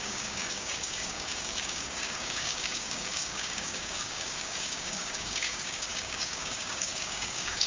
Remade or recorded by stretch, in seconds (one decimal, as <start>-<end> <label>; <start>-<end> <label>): 0.0-7.7 remade